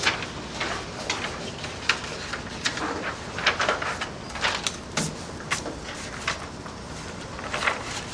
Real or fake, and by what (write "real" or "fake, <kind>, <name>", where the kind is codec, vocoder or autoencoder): real